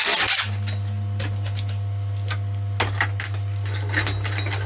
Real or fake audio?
real